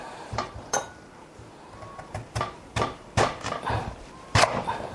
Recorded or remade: remade